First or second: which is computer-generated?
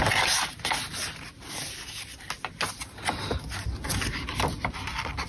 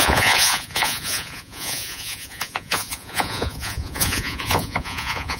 second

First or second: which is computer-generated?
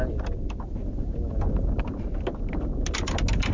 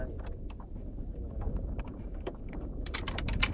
second